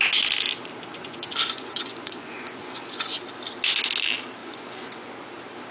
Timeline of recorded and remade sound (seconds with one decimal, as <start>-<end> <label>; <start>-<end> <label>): 0.0-0.9 recorded; 0.9-3.2 remade; 3.2-4.4 recorded; 4.4-5.1 remade; 5.1-5.7 recorded